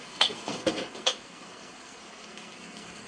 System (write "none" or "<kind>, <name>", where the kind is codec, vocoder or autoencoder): codec, SNAC